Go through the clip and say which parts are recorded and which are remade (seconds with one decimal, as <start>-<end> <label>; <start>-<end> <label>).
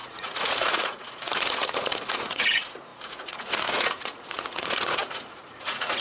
0.0-6.0 remade